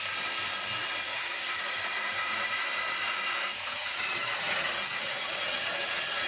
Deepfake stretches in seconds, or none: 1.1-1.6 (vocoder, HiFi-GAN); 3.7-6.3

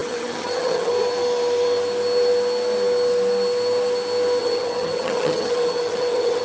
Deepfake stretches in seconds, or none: 0.0-0.9 (vocoder, HiFi-GAN); 4.4-6.4